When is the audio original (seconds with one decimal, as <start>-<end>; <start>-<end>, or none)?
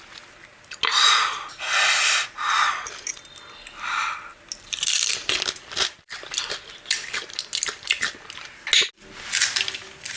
0.0-4.3; 8.0-10.2